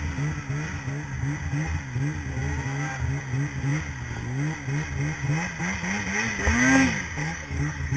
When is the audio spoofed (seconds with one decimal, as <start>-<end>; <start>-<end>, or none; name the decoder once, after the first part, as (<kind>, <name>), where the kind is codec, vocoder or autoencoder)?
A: 7.2-8.0 (codec, DAC)